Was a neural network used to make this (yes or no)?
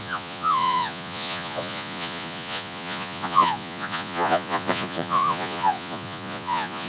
yes